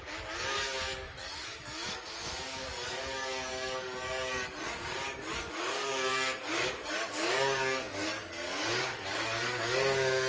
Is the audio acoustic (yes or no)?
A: no